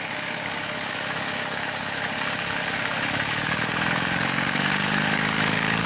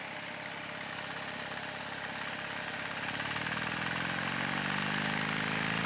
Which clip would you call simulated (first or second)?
first